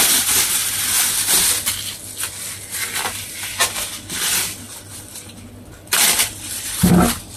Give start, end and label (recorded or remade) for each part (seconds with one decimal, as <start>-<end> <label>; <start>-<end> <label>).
0.0-0.6 remade; 0.6-5.0 recorded; 5.0-7.4 remade